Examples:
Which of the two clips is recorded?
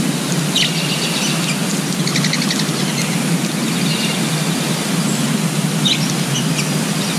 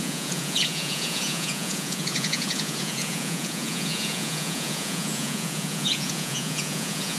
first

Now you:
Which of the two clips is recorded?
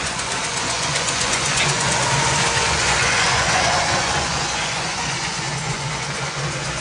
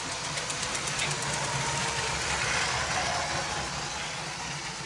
second